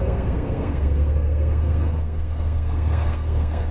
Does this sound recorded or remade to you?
remade